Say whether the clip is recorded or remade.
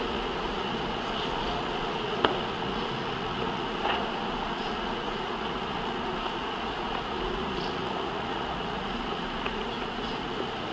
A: remade